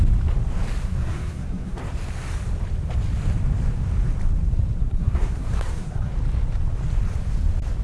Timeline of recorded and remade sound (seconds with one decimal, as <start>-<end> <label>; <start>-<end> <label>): 0.0-0.8 recorded; 0.8-1.8 remade; 1.8-4.8 recorded; 4.8-6.1 remade; 6.1-7.8 recorded